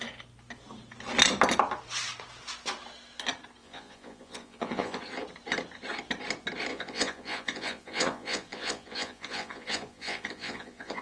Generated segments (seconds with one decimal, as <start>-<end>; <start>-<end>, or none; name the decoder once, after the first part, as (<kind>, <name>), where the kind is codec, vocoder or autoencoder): 3.6-5.0 (vocoder, Vocos); 6.7-11.0

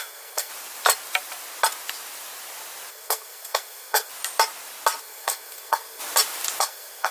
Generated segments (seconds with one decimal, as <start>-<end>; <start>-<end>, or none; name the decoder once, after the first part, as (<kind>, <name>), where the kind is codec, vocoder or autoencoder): 0.0-0.5 (codec, SNAC); 2.9-4.1; 5.0-6.0; 6.6-7.1

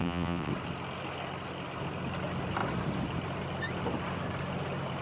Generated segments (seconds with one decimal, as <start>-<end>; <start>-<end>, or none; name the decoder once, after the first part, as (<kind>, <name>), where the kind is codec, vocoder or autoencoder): 0.0-0.5 (vocoder, WaveNeXt)

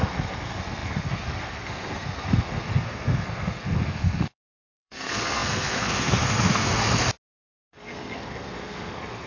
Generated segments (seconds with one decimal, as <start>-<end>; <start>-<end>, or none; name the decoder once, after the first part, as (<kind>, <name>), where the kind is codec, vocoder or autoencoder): 0.0-6.8 (codec, SNAC); 7.5-9.3

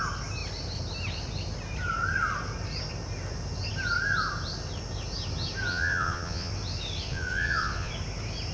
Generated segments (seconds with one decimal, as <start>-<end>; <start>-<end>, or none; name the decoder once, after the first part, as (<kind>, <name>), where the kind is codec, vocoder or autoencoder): 5.7-6.5 (vocoder, Vocos); 7.1-7.9